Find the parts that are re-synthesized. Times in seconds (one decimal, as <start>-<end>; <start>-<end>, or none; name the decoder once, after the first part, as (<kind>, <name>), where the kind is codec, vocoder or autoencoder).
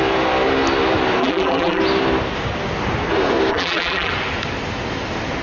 1.2-1.8 (vocoder, BigVGAN v2); 3.5-4.1